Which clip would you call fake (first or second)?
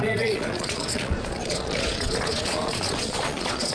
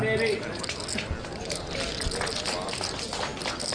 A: first